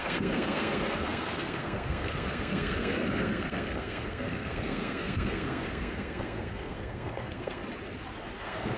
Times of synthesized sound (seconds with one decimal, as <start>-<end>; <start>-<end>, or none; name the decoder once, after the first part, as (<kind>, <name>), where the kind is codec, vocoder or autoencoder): 0.0-7.6 (codec, SNAC); 8.4-8.8